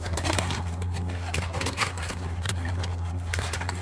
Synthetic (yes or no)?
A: yes